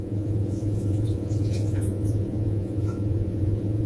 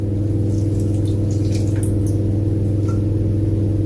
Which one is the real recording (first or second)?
second